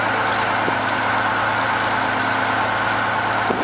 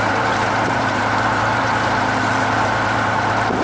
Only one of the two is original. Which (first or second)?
first